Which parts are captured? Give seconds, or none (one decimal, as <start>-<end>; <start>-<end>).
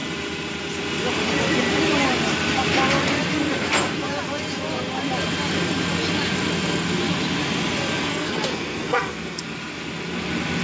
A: 0.0-8.1; 9.4-10.6